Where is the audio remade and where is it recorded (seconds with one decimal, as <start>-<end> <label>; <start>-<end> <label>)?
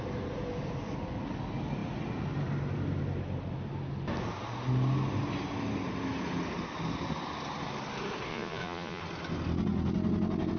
0.0-8.3 recorded; 8.3-9.0 remade; 9.0-10.6 recorded